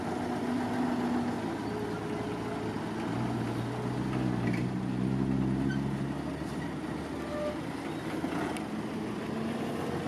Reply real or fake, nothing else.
real